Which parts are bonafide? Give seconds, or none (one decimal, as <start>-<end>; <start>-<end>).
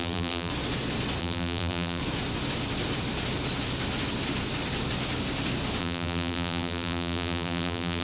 0.5-1.2; 2.0-5.8